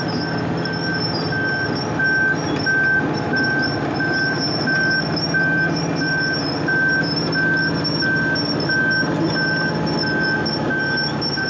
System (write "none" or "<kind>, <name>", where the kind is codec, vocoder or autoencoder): none